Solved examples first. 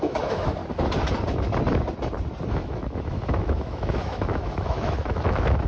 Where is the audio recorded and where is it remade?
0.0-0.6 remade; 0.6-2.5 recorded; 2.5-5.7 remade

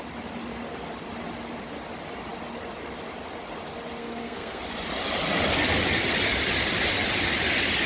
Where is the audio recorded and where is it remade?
0.0-4.0 recorded; 4.0-4.6 remade; 4.6-7.9 recorded

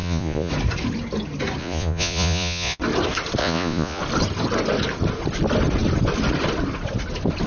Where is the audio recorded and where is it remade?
0.0-0.5 remade; 0.5-1.6 recorded; 1.6-2.8 remade; 2.8-3.4 recorded; 3.4-4.0 remade; 4.0-7.5 recorded

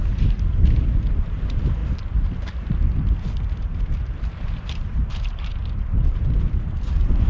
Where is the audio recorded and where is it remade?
0.0-1.8 remade; 1.8-4.6 recorded; 4.6-5.6 remade; 5.6-6.1 recorded; 6.1-7.3 remade